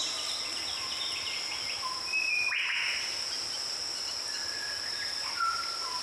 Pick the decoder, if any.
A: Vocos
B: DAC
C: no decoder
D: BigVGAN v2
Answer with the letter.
C